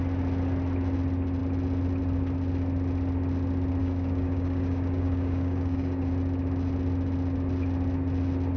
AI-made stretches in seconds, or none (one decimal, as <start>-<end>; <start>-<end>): 3.8-6.1

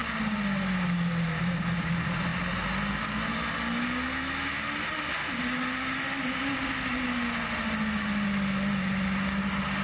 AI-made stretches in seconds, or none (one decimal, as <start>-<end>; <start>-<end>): none

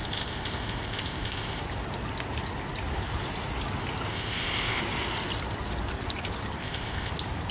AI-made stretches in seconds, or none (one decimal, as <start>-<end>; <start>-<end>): 0.0-1.6; 4.1-4.8; 6.6-7.1

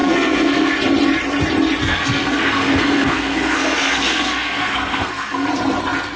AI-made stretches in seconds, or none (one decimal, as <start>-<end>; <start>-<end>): 0.0-0.7; 1.8-5.5